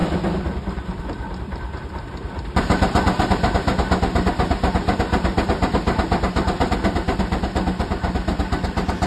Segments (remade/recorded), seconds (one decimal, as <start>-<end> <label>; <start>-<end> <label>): 0.0-2.0 remade; 2.0-9.1 recorded